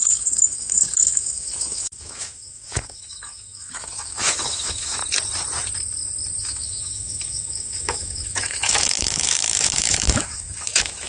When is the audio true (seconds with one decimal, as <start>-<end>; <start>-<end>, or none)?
5.0-6.4